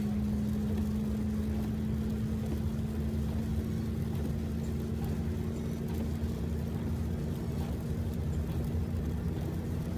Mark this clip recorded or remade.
recorded